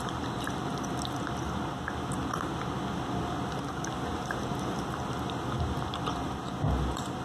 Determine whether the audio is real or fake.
real